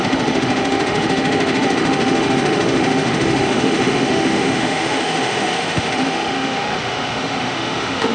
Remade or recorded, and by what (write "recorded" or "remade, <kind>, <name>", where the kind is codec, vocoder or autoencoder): remade, autoencoder, DAC-VAE